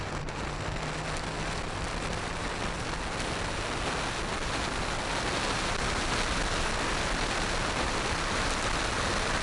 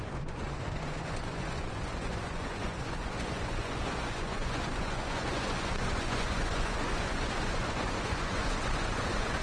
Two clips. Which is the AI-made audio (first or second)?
second